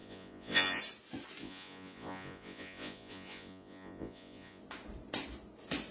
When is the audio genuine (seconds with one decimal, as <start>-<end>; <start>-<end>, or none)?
0.8-1.4; 4.6-5.9